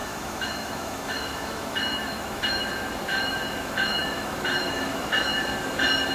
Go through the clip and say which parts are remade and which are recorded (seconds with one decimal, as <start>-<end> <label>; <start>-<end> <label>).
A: 0.0-2.7 remade; 2.7-3.1 recorded; 3.1-5.4 remade; 5.4-6.1 recorded